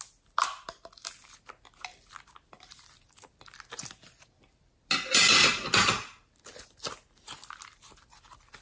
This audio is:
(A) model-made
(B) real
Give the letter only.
B